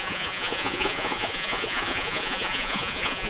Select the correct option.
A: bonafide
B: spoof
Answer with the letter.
B